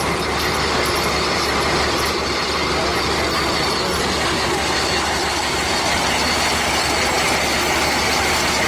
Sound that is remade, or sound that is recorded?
recorded